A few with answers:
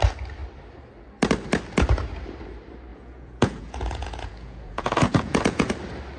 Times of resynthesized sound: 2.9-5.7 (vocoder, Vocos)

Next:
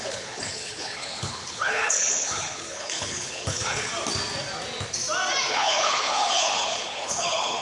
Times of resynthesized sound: 0.0-3.9 (codec, HILCodec); 5.5-7.6

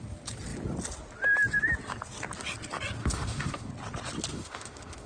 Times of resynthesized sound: 3.0-3.7 (autoencoder, DAC-VAE); 4.3-5.1

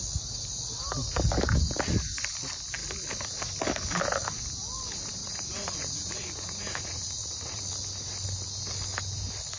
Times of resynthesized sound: 5.2-7.6 (vocoder, Vocos)

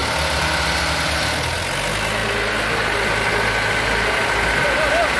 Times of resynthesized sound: none

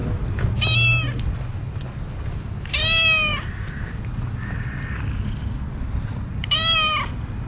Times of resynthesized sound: none